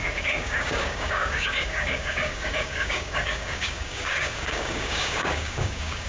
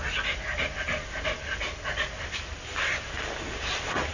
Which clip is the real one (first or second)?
second